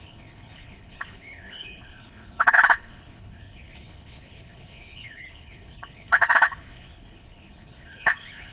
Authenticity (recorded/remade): remade